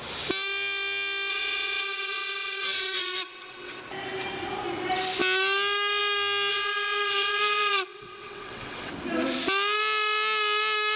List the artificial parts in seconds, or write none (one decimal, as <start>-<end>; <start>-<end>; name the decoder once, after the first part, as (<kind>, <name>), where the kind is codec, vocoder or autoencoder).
1.3-3.8 (vocoder, WaveNeXt); 6.5-8.9